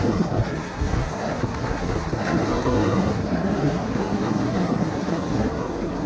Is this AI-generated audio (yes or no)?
yes